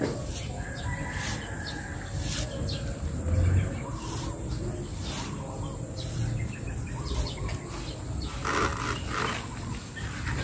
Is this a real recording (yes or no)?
yes